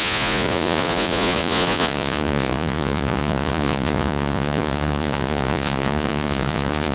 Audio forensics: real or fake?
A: fake